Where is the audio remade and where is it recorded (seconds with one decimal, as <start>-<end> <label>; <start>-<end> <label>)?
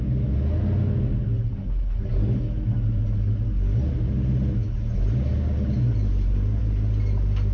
0.0-7.5 recorded